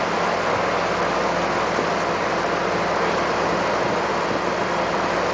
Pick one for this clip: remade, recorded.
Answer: recorded